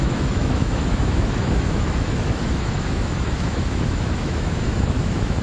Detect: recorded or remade remade